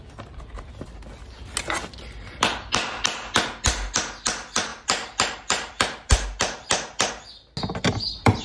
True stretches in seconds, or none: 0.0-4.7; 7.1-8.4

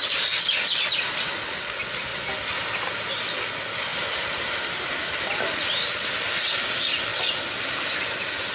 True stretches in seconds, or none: 0.0-3.9; 4.9-7.1; 7.9-8.5